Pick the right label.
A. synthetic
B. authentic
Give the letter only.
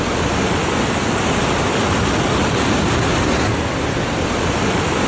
A